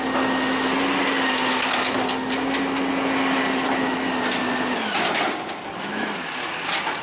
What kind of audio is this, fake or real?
real